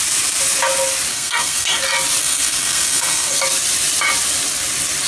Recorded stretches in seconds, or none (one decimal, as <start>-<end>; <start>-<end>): 0.0-1.1; 1.8-2.2; 3.4-5.1